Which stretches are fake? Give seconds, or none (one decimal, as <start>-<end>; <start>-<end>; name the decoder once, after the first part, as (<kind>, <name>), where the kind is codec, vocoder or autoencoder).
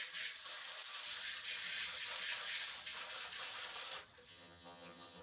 4.3-5.2 (vocoder, HiFi-GAN)